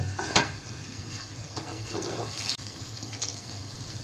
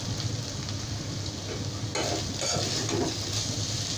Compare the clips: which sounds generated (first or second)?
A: first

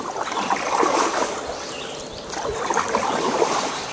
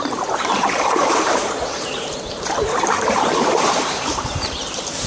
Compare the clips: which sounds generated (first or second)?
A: second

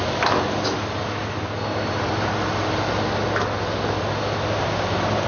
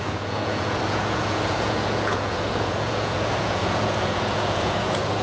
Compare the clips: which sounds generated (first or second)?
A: second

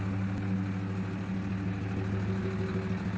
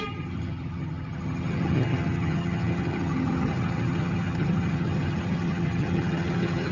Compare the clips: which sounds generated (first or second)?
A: second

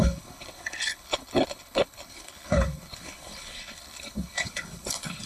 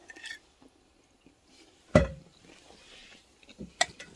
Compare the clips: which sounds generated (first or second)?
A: first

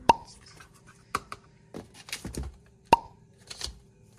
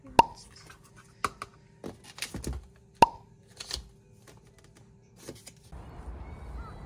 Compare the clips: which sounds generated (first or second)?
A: first